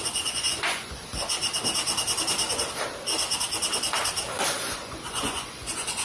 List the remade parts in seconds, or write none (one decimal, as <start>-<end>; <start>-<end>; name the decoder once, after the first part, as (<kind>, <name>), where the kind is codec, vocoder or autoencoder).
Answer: 0.0-1.0 (vocoder, Vocos); 4.6-6.0